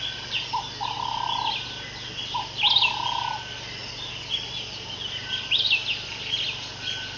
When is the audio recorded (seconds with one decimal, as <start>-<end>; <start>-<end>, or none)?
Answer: 0.0-7.2